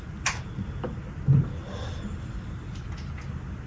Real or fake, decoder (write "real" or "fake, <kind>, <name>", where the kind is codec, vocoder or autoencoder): real